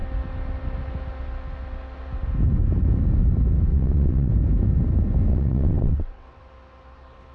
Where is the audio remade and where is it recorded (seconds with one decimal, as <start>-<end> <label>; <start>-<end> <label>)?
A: 0.0-3.7 recorded; 3.7-4.3 remade; 4.3-5.3 recorded; 5.3-6.5 remade; 6.5-7.3 recorded